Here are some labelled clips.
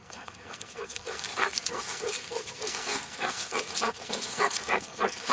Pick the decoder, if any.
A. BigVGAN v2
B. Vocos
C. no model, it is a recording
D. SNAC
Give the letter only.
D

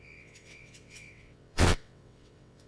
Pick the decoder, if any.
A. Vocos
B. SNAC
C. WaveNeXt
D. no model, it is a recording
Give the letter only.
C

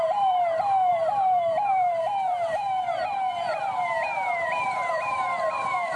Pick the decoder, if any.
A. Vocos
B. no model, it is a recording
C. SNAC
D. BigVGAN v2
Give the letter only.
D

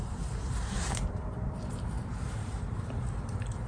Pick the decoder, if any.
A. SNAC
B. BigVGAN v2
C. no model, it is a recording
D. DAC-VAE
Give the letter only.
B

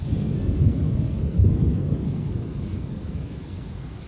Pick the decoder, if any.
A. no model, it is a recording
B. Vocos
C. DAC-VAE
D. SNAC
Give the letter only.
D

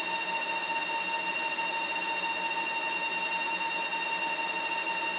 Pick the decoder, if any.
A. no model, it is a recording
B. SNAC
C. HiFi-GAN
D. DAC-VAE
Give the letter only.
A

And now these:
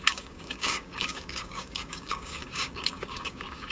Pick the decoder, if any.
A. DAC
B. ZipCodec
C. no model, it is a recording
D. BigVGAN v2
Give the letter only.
A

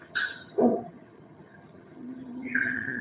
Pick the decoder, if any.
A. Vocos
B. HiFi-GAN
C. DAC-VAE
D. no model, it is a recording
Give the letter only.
B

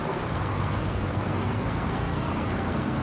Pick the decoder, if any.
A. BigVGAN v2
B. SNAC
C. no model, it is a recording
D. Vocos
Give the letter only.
B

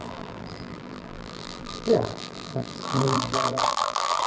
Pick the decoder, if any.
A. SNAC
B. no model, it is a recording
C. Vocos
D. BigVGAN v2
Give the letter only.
D